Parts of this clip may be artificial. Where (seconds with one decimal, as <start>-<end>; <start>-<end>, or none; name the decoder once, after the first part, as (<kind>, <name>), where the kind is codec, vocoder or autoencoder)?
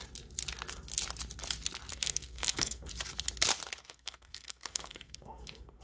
1.9-2.9 (codec, SNAC); 3.8-5.8